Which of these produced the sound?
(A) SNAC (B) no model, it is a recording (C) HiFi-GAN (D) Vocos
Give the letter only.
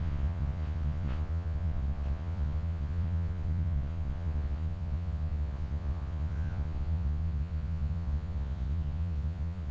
D